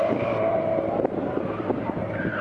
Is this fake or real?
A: fake